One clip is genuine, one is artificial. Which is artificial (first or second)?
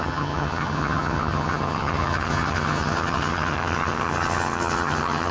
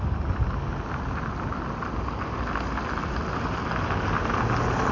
first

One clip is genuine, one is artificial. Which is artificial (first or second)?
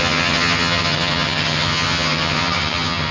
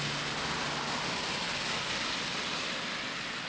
first